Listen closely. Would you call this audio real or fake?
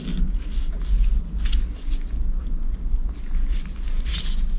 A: real